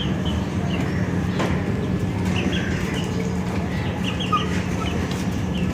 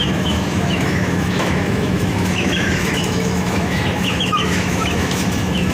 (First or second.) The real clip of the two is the first